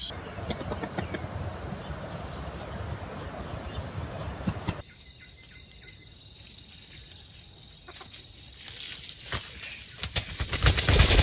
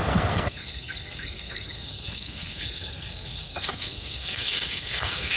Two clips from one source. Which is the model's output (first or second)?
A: second